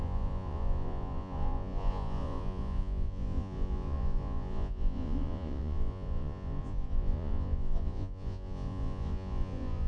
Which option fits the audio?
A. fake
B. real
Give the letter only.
A